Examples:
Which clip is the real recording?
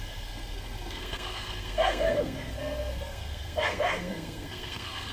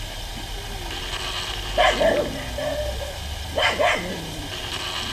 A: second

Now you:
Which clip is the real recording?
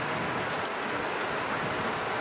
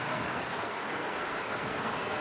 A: first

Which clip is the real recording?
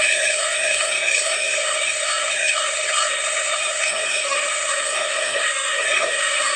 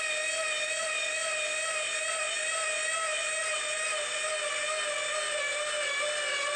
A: second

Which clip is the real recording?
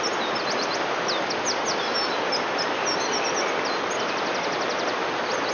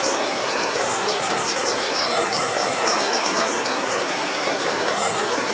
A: first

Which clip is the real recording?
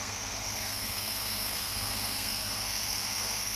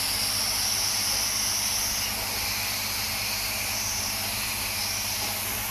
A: second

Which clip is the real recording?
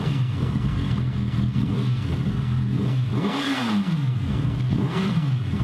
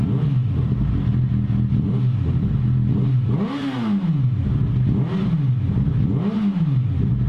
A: second